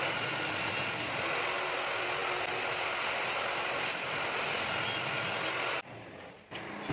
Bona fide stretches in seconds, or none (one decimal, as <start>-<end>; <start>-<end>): 0.0-6.9